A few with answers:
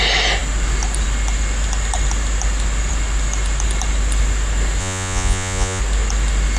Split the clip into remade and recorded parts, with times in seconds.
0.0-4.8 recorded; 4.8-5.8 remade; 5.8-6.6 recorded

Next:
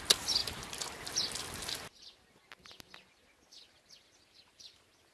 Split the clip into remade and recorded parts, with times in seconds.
0.0-5.1 recorded

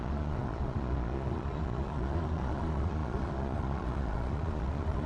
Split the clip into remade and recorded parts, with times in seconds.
0.0-5.1 remade

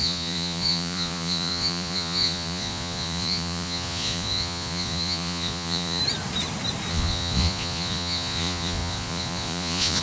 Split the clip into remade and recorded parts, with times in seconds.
0.0-6.0 remade; 6.0-6.9 recorded; 6.9-10.0 remade

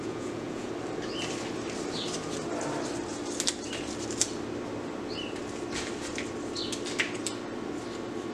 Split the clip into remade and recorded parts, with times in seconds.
0.0-0.7 remade; 0.7-8.3 recorded